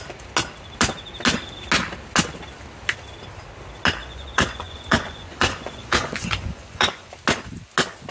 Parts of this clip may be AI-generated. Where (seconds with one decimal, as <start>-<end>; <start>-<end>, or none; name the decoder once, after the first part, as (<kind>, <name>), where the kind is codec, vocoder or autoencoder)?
4.0-7.1 (vocoder, Vocos)